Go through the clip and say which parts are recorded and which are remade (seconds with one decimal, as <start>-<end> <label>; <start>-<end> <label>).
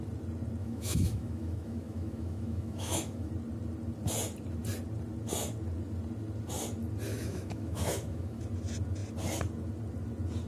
0.0-0.6 recorded; 0.6-3.3 remade; 3.3-7.1 recorded; 7.1-8.4 remade; 8.4-10.5 recorded